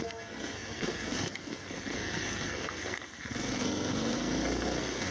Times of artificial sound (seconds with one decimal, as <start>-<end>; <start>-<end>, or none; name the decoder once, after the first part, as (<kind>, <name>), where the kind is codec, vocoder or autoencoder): 0.0-5.1 (codec, SNAC)